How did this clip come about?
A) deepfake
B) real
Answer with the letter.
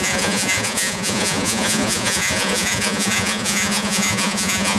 A